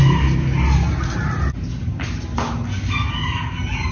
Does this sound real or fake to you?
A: real